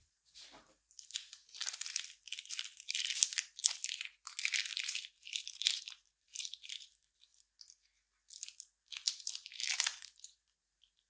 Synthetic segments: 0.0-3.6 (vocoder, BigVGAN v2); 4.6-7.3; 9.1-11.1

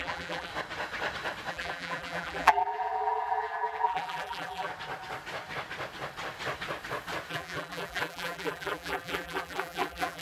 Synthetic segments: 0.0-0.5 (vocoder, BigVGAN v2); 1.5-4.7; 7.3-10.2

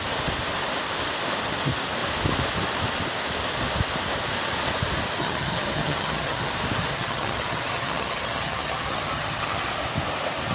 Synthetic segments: 5.2-6.5 (vocoder, HiFi-GAN); 6.9-9.7

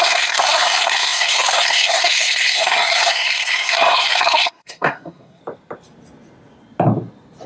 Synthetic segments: 0.0-5.4 (codec, SNAC)